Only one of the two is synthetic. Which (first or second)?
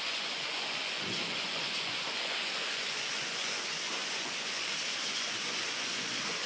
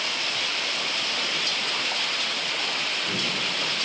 first